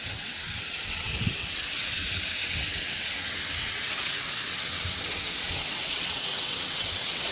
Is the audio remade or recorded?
remade